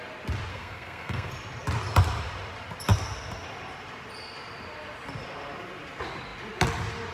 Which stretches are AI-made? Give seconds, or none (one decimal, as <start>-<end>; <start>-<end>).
0.5-1.3